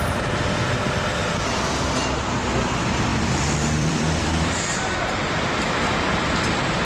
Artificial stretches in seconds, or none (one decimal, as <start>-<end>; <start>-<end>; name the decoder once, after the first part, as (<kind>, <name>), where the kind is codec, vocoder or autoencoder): 3.1-4.6 (vocoder, BigVGAN v2)